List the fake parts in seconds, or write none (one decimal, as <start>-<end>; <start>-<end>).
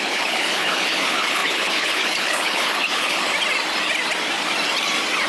0.0-3.3